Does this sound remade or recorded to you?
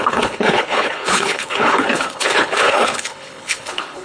remade